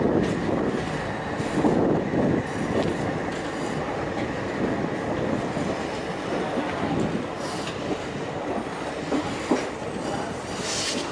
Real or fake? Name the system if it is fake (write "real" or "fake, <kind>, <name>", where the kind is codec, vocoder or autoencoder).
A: real